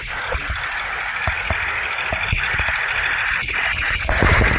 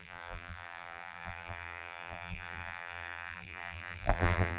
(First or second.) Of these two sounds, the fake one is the second